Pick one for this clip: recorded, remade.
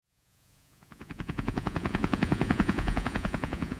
remade